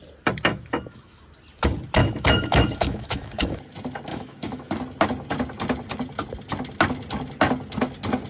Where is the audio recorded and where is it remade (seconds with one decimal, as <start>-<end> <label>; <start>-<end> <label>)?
0.0-0.5 recorded; 0.5-1.2 remade; 1.2-2.0 recorded; 2.0-3.6 remade; 3.6-4.1 recorded; 4.1-4.7 remade; 4.7-8.3 recorded